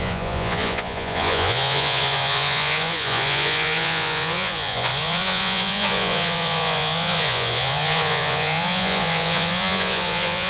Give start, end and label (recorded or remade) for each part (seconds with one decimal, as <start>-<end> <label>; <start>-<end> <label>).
0.0-10.5 remade